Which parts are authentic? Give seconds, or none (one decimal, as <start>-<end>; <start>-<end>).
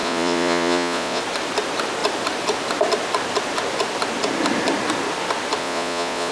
1.2-5.6